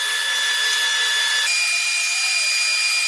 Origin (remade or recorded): recorded